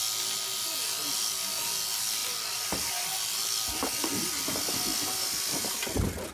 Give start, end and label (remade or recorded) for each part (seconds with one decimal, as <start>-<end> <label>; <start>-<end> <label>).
0.0-6.3 recorded